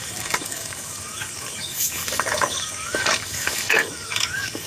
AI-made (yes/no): yes